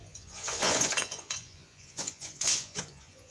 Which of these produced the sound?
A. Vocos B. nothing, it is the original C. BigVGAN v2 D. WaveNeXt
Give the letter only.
A